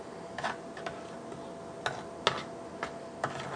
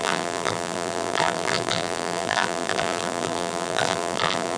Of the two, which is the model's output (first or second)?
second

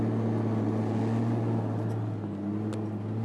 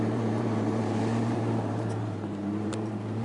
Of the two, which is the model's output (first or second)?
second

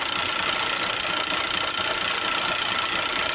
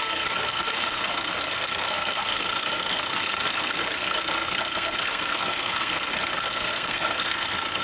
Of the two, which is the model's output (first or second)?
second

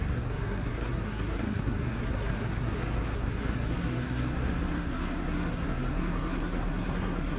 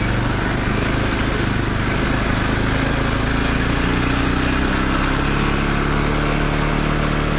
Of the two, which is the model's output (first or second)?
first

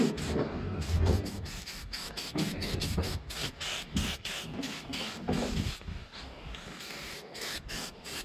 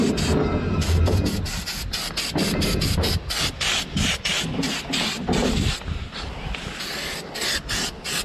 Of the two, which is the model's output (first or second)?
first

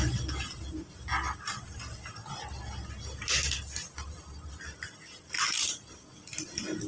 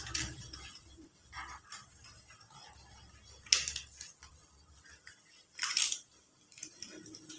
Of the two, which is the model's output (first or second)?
second